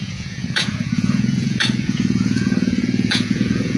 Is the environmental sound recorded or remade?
remade